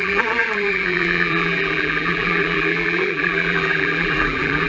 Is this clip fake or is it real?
fake